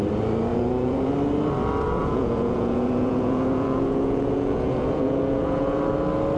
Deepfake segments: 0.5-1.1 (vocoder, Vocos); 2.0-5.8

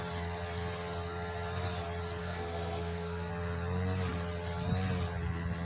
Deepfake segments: 2.2-3.3 (codec, SNAC)

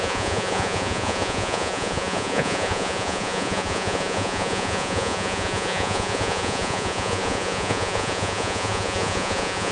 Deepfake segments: 0.0-9.7 (vocoder, Vocos)

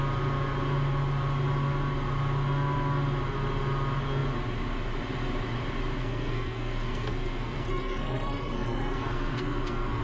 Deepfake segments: 6.0-10.0 (codec, SNAC)

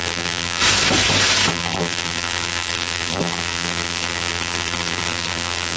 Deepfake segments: 0.0-0.6 (vocoder, BigVGAN v2); 1.5-5.8